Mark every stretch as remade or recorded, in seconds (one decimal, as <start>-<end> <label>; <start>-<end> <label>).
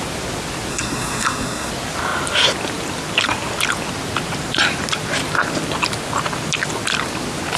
0.0-0.7 recorded; 0.7-1.7 remade; 1.7-7.6 recorded